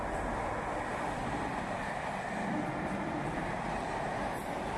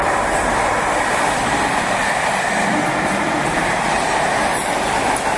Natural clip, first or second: first